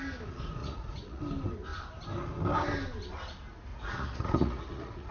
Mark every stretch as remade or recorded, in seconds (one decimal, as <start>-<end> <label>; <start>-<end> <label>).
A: 0.0-0.6 recorded; 0.6-1.2 remade; 1.2-3.7 recorded; 3.7-5.1 remade